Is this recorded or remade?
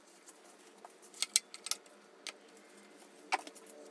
recorded